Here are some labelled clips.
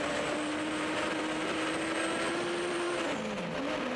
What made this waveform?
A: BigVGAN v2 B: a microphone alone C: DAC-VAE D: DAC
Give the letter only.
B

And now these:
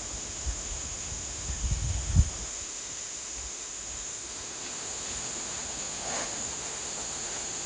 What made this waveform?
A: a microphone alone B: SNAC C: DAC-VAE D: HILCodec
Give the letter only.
C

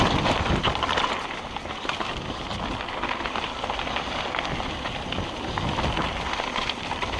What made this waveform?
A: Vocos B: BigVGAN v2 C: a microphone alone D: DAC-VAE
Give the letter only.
C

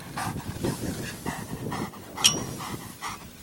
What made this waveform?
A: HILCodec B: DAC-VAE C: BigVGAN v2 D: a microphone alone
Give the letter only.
D